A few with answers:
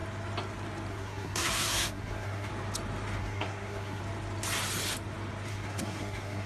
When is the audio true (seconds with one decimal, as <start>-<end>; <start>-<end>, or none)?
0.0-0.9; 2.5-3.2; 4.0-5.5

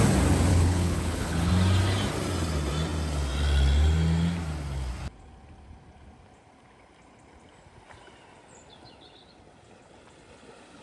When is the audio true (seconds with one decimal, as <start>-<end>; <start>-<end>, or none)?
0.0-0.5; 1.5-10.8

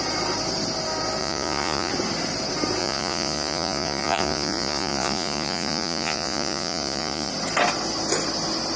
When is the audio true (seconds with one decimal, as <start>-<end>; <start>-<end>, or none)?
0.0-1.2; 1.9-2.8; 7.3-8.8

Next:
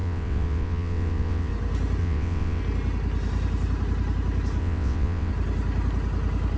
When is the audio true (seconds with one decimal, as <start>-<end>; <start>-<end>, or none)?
1.5-2.0; 2.6-4.6; 5.3-6.6